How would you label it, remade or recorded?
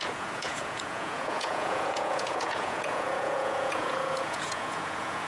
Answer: remade